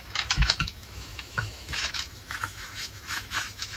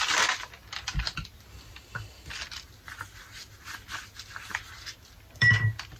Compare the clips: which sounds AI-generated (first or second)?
first